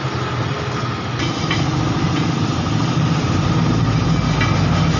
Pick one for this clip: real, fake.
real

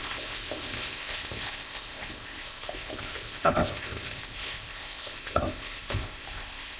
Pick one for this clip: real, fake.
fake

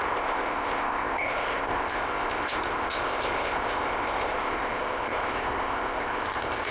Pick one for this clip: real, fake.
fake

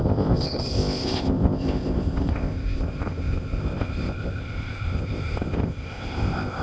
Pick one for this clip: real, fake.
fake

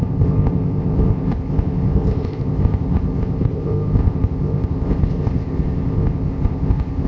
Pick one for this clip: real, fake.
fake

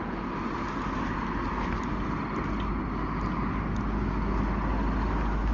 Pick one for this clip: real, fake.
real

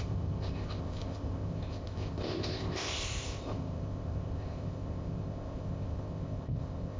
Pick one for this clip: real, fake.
fake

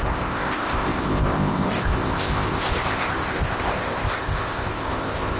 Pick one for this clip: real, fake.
fake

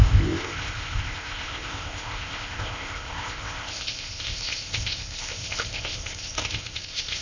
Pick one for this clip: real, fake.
fake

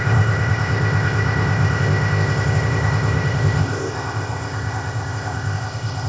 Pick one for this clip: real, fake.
fake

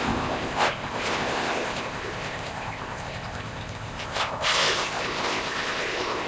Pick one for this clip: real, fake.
fake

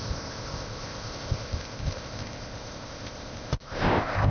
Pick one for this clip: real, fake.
fake